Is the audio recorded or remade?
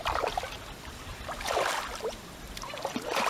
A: recorded